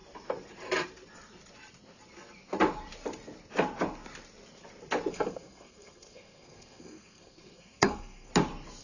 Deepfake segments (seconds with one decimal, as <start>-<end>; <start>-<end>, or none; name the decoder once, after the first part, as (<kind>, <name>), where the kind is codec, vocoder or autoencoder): 5.1-8.3 (codec, SNAC)